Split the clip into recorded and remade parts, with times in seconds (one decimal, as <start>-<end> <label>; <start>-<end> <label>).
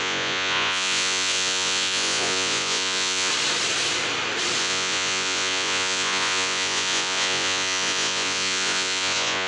0.0-3.3 remade; 3.3-4.6 recorded; 4.6-9.5 remade